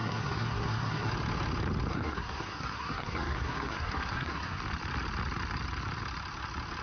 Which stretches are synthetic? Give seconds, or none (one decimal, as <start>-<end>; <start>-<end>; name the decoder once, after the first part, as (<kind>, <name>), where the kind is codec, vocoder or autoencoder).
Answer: 0.0-1.1 (codec, SNAC); 1.9-4.6